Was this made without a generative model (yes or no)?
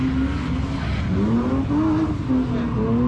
yes